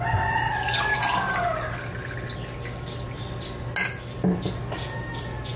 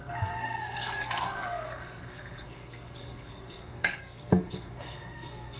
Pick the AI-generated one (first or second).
second